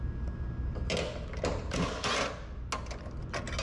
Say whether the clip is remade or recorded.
recorded